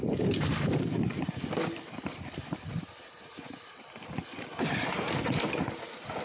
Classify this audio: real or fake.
real